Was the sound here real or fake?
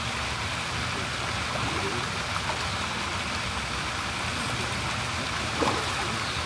real